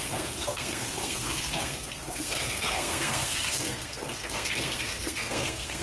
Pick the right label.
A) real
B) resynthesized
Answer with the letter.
B